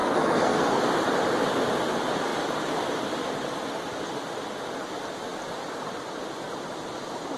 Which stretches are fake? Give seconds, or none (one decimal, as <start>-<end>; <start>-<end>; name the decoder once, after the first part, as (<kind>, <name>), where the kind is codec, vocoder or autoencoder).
0.0-0.8 (codec, SNAC)